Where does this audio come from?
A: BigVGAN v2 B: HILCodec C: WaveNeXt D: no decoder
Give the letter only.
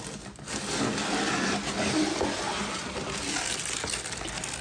D